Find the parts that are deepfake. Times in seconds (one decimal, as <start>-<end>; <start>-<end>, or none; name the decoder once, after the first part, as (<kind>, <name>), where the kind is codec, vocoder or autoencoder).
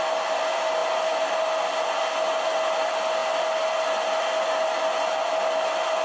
none